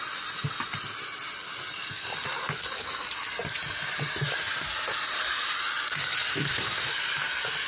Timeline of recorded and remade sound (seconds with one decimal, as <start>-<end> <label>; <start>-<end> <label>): 0.0-6.3 recorded; 6.3-6.9 remade; 6.9-7.7 recorded